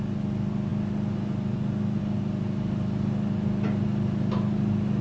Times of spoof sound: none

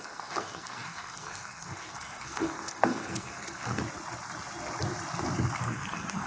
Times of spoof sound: 0.0-3.8; 5.6-6.3

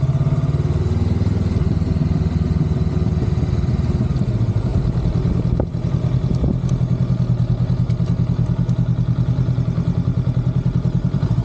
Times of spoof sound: none

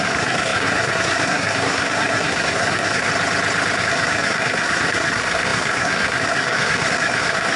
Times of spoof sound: 0.0-3.1; 3.8-7.6

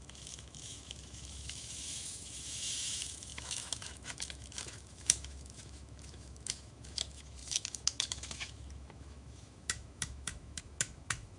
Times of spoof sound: 0.0-11.4

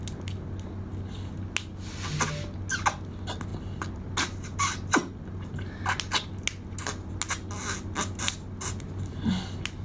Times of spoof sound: none